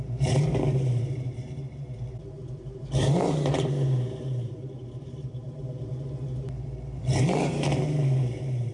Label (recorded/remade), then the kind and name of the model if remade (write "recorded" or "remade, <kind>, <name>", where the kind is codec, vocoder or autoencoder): remade, vocoder, BigVGAN v2